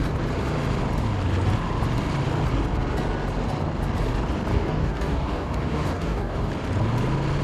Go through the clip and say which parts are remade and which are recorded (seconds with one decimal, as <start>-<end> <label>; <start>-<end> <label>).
0.0-4.5 recorded; 4.5-6.5 remade; 6.5-7.4 recorded